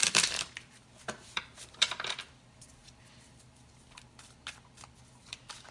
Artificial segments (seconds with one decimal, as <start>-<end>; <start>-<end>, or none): 0.0-2.8; 5.2-5.7